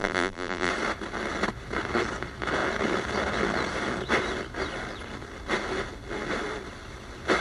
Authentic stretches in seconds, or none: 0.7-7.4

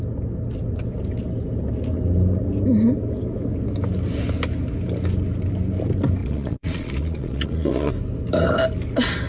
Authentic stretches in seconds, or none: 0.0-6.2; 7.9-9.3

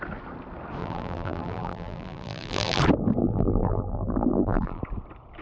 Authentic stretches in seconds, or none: 0.0-0.8; 2.8-3.2; 4.8-5.4

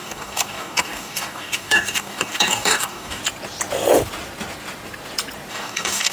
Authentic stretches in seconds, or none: 3.2-5.5

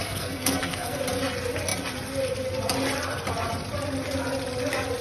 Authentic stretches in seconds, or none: 1.0-5.0

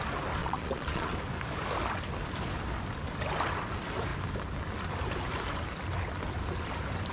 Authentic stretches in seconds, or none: 0.0-0.4; 1.1-7.1